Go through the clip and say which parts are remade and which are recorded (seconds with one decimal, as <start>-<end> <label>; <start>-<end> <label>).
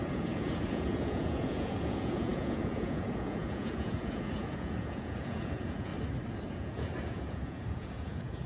0.0-5.9 remade; 5.9-6.5 recorded; 6.5-8.5 remade